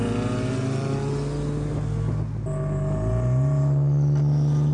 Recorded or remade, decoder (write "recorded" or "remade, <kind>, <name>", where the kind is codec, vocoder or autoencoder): recorded